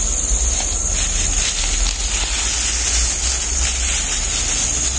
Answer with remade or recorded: recorded